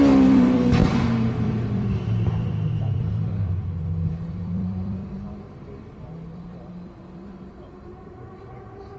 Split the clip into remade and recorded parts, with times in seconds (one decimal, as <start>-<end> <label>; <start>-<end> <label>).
0.0-9.0 remade